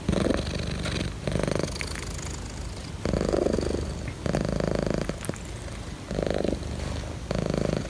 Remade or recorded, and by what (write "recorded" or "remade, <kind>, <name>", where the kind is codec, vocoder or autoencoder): recorded